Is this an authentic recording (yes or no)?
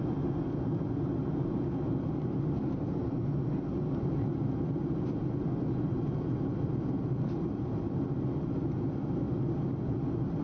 yes